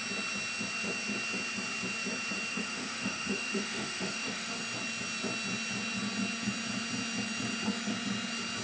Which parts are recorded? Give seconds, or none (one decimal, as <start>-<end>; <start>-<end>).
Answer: 0.0-2.5; 4.6-8.6